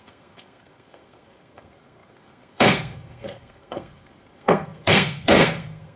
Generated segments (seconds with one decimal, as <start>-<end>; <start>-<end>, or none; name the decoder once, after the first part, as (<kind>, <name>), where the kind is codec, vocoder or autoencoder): 0.0-6.0 (codec, SNAC)